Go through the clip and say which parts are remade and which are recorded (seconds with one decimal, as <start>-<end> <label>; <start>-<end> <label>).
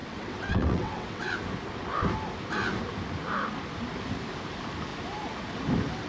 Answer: 0.0-1.3 remade; 1.3-6.1 recorded